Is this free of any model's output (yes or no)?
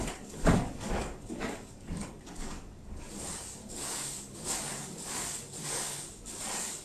no